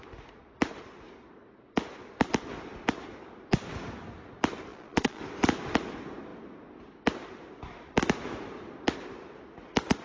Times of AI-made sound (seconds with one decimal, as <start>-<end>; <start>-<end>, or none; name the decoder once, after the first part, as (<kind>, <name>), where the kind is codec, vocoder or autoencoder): 4.7-5.2 (vocoder, Vocos)